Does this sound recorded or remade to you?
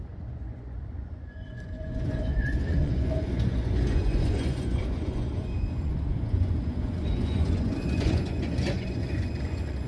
remade